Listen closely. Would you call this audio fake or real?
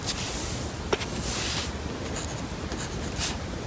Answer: real